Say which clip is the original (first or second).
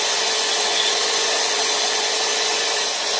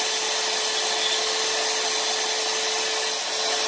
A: second